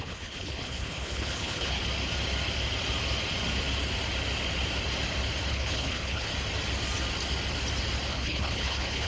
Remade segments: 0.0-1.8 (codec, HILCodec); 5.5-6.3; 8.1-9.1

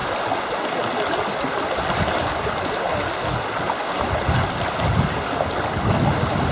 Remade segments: none

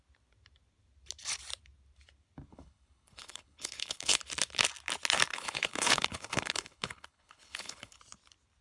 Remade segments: 2.5-4.2 (codec, HILCodec); 5.3-8.0

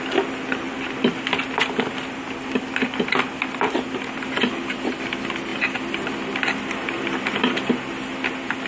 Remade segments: none

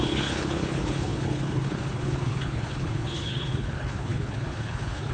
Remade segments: 0.0-5.1 (codec, HILCodec)

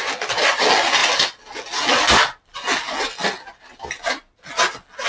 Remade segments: none